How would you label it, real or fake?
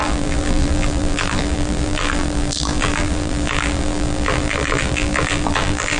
fake